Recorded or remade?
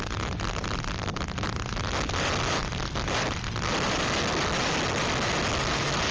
recorded